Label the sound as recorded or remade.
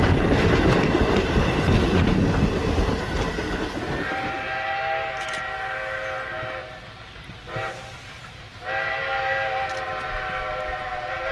recorded